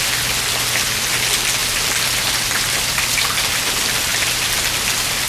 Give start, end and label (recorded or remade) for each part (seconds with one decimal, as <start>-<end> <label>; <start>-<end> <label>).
0.0-1.6 recorded; 1.6-3.3 remade; 3.3-5.3 recorded